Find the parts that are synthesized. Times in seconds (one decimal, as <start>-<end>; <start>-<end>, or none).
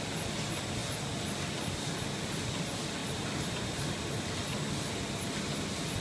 3.0-4.0